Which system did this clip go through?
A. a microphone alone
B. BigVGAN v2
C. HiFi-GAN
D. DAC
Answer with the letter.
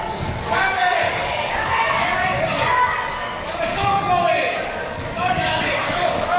D